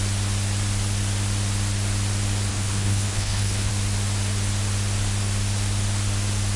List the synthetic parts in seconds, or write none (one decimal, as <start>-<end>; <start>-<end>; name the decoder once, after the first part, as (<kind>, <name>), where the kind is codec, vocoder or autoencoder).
2.5-3.7 (codec, HILCodec)